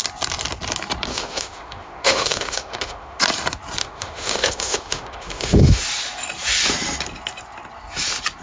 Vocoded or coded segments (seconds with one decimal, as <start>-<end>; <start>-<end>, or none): 1.1-3.2; 3.8-5.8